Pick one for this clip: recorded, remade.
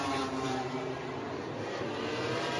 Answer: remade